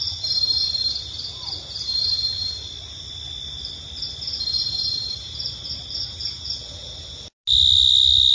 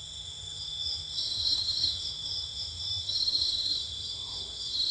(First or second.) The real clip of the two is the first